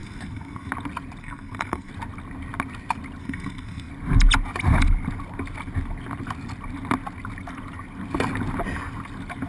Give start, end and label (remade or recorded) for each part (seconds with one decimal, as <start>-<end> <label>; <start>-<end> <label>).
0.0-0.7 remade; 0.7-1.2 recorded; 1.2-1.9 remade; 1.9-3.2 recorded; 3.2-3.9 remade; 3.9-9.5 recorded